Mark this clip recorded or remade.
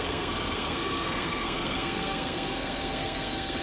remade